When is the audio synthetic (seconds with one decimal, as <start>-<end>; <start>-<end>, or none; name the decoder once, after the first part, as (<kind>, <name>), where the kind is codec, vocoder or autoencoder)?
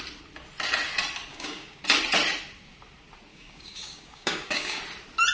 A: 1.3-1.8 (codec, DAC); 3.3-4.8